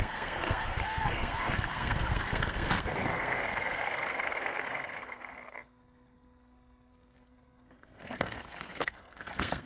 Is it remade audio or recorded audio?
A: remade